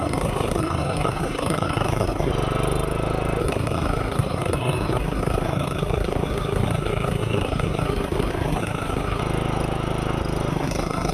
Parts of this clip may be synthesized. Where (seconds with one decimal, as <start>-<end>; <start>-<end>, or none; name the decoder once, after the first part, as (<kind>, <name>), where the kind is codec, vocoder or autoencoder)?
0.0-2.3 (codec, SNAC); 3.4-9.2; 10.5-11.1